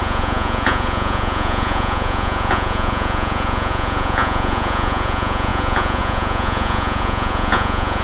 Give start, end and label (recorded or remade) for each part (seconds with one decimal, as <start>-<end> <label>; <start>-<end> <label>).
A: 0.0-8.0 remade

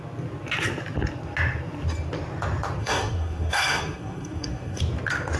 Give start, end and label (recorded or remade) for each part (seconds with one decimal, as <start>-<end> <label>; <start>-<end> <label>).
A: 0.0-2.8 recorded; 2.8-4.8 remade; 4.8-5.4 recorded

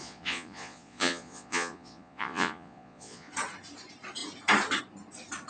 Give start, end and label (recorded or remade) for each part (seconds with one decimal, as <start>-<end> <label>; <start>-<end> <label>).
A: 0.0-3.3 remade; 3.3-5.5 recorded